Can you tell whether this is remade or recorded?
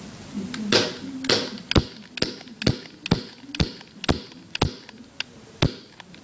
recorded